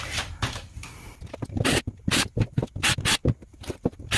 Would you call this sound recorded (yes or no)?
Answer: yes